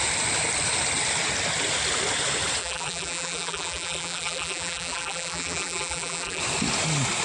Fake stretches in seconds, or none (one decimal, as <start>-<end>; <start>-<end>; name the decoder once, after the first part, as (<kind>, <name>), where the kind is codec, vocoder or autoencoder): 2.6-6.4 (vocoder, BigVGAN v2)